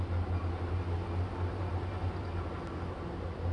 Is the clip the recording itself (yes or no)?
yes